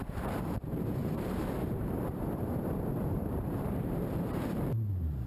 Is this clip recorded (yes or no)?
no